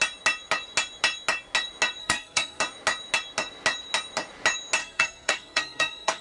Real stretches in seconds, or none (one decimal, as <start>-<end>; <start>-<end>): 0.0-2.0; 2.6-4.8